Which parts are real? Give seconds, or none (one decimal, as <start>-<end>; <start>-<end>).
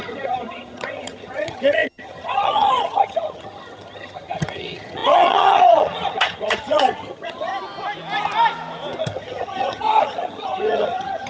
7.5-9.0